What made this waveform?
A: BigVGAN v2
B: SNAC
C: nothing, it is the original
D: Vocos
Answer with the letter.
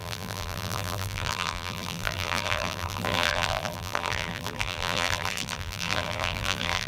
A